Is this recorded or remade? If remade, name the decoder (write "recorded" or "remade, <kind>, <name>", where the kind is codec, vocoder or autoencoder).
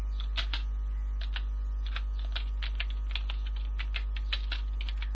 recorded